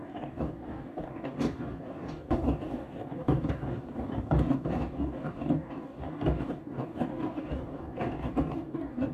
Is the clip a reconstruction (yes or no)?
yes